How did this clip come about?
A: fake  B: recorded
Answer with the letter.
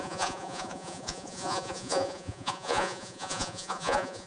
A